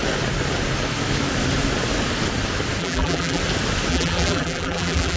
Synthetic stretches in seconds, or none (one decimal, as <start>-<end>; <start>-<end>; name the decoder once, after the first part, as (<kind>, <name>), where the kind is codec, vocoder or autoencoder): 2.8-3.4 (vocoder, BigVGAN v2); 3.9-5.2